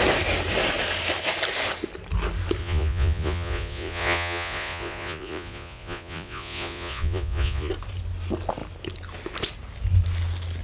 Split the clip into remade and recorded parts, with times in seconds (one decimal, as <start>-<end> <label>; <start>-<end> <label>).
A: 0.0-2.6 recorded; 2.6-7.7 remade; 7.7-10.6 recorded